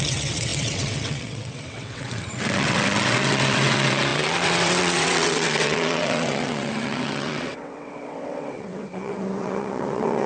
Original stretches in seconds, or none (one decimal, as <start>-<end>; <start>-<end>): none

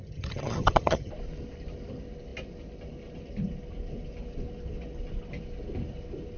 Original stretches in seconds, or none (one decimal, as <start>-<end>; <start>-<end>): 1.1-6.4